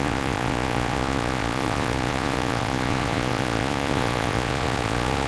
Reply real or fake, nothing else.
fake